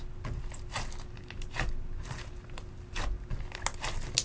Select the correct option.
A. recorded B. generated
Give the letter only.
A